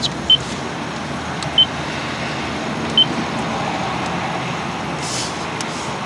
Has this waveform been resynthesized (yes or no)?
no